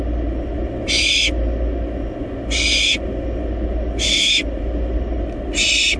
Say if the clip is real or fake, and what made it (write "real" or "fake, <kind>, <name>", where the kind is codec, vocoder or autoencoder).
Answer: real